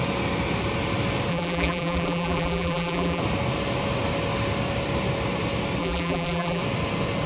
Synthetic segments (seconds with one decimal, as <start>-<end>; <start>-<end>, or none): 1.3-3.2; 5.8-6.6